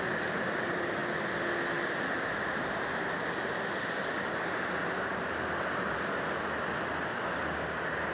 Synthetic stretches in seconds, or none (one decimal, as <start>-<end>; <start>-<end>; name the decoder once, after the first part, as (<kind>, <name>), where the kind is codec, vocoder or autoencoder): 0.0-1.0 (vocoder, BigVGAN v2); 5.1-8.1